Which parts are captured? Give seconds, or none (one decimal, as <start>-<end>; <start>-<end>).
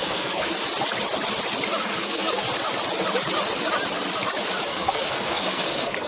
0.5-1.8; 2.4-4.7